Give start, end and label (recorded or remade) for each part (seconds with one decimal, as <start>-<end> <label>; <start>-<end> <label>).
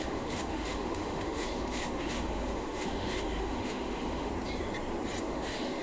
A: 0.0-4.3 remade; 4.3-5.2 recorded; 5.2-5.8 remade